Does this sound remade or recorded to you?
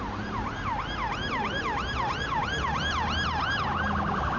recorded